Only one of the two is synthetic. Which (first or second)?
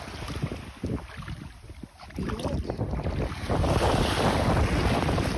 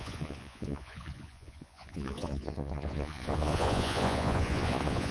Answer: second